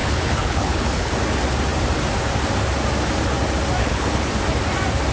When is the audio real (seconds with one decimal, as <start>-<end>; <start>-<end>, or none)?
1.1-3.8; 4.3-5.1